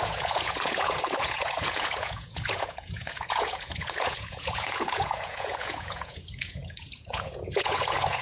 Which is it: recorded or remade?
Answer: remade